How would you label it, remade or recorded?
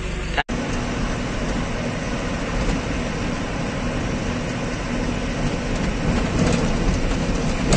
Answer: recorded